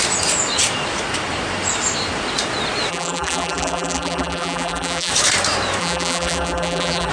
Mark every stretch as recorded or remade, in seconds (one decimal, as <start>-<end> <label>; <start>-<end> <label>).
0.0-2.9 recorded; 2.9-5.1 remade; 5.1-5.8 recorded; 5.8-7.1 remade